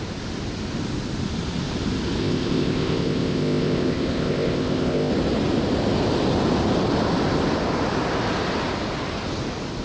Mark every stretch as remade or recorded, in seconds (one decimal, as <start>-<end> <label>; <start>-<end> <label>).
0.0-2.2 recorded; 2.2-5.1 remade; 5.1-9.8 recorded